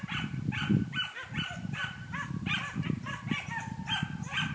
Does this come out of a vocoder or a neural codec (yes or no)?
yes